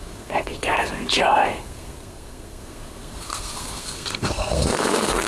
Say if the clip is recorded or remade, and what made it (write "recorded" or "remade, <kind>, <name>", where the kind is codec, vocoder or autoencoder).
remade, codec, SNAC